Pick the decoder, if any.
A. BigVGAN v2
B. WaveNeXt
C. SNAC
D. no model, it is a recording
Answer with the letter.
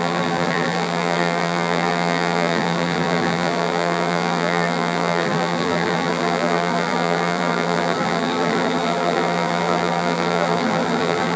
A